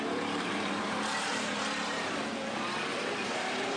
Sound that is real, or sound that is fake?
fake